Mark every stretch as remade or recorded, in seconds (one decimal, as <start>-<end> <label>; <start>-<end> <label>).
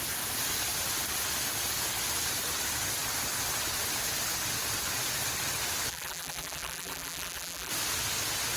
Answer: 0.0-5.9 recorded; 5.9-7.7 remade; 7.7-8.6 recorded